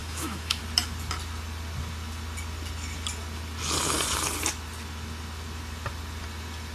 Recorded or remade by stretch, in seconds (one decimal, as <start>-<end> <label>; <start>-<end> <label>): 0.0-0.6 remade; 0.6-6.7 recorded